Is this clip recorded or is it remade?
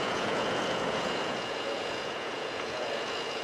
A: remade